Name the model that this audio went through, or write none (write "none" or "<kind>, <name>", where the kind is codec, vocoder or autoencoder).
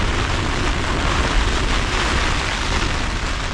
none